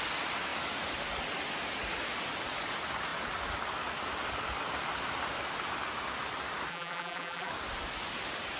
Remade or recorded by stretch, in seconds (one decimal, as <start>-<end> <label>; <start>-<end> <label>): 0.0-6.7 recorded; 6.7-7.5 remade; 7.5-8.6 recorded